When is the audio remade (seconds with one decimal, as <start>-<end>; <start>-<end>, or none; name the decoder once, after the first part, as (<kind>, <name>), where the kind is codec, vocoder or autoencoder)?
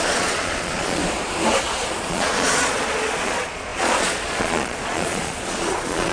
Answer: 0.0-1.0 (vocoder, Vocos); 2.1-6.1